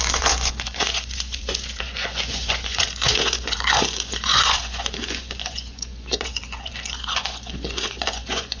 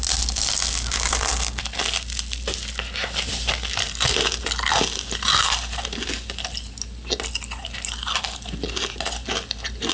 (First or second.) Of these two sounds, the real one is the second